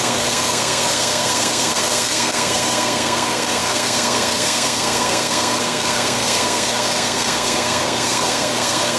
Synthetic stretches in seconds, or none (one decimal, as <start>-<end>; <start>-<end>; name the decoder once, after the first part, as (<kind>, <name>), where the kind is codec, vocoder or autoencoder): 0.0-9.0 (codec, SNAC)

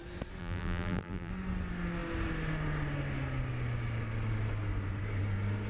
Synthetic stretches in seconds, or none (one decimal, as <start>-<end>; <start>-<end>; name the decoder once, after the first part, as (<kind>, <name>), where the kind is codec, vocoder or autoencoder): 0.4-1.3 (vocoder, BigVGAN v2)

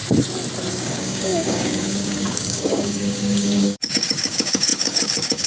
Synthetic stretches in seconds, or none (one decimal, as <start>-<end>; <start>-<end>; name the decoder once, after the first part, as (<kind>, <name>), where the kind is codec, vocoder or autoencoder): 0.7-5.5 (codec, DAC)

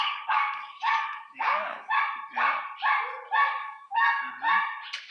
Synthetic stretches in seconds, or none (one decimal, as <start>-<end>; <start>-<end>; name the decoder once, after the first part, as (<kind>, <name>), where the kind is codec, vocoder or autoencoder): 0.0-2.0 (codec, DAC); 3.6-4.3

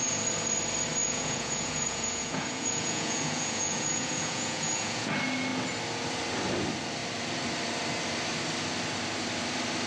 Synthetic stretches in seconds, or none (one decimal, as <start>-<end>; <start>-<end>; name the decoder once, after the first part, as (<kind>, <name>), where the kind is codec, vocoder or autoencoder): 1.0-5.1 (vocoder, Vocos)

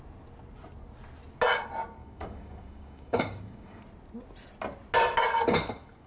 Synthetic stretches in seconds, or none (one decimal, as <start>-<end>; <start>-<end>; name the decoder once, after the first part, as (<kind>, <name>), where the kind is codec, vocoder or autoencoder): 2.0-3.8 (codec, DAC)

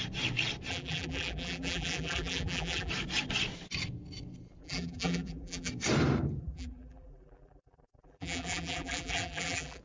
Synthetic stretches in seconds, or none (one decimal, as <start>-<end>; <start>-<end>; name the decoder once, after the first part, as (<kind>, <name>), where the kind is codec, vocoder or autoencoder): 0.7-2.9 (vocoder, BigVGAN v2); 4.6-5.7; 6.4-9.8